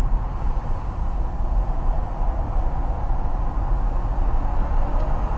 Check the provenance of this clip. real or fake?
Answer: real